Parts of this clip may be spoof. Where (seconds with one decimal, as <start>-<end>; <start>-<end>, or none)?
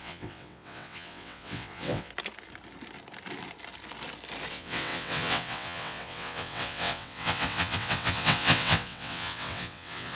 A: 0.0-2.1; 4.5-10.2